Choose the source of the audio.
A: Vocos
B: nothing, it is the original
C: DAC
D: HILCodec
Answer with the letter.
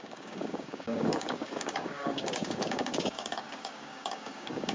C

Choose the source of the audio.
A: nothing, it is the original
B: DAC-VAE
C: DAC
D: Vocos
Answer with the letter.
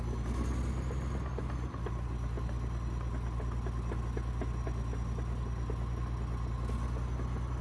A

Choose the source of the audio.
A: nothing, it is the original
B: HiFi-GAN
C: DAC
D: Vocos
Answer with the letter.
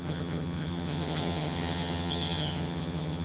B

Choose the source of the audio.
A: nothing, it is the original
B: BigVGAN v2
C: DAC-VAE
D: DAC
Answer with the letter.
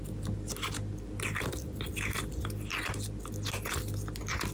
A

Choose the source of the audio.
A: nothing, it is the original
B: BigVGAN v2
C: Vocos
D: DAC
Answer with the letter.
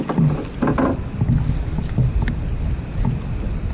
A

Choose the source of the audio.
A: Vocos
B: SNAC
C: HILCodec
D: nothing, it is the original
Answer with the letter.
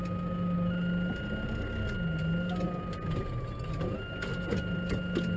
D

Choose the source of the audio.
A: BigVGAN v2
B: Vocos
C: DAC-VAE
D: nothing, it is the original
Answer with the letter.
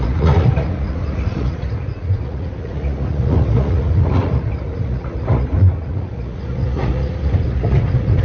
B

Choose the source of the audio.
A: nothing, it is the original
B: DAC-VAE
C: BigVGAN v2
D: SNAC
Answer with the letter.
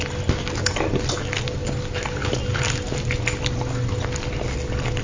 A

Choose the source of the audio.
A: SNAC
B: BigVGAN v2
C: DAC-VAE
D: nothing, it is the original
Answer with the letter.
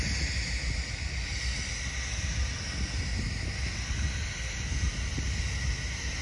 D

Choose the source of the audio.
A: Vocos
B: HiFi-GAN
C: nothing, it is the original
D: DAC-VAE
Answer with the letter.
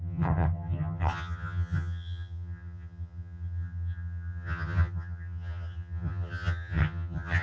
B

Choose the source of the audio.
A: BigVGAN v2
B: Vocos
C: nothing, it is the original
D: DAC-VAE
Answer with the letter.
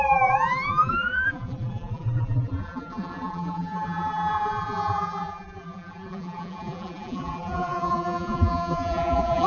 A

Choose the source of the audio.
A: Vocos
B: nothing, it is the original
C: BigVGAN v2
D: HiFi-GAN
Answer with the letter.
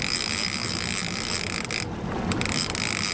B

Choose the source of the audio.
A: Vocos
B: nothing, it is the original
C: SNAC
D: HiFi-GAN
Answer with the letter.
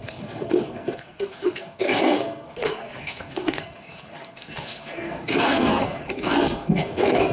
C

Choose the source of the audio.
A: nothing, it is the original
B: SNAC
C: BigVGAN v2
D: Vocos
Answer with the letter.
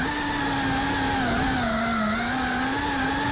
A